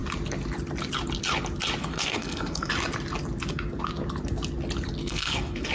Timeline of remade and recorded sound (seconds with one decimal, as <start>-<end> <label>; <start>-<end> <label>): 0.0-1.8 recorded; 1.8-2.7 remade; 2.7-5.0 recorded; 5.0-5.7 remade

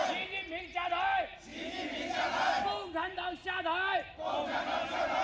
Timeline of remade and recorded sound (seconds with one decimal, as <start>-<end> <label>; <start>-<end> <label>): 0.0-5.2 recorded

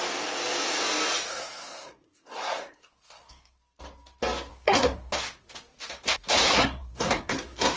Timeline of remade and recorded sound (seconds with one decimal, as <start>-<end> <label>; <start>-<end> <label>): 0.0-1.3 recorded; 1.3-3.6 remade; 3.6-4.5 recorded; 4.5-5.1 remade; 5.1-6.4 recorded; 6.4-7.8 remade

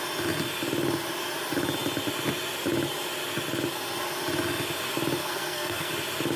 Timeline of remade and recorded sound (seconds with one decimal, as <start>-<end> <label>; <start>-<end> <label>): 0.0-5.2 recorded; 5.2-5.9 remade; 5.9-6.4 recorded

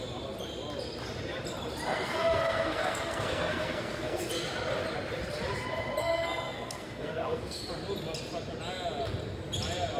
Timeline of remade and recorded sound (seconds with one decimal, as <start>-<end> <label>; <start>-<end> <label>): 0.0-1.9 recorded; 1.9-4.3 remade; 4.3-6.0 recorded; 6.0-7.7 remade; 7.7-10.0 recorded

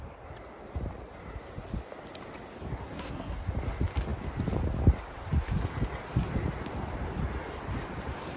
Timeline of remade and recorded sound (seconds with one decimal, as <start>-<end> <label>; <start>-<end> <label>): 0.0-2.7 recorded; 2.7-3.5 remade; 3.5-8.4 recorded